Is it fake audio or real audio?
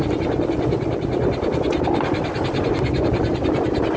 real